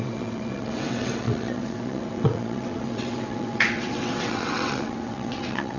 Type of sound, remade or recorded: remade